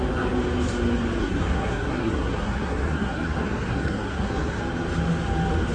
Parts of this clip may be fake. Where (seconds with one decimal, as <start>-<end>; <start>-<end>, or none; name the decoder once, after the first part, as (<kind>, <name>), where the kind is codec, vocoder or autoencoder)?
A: 1.2-4.6 (codec, SNAC)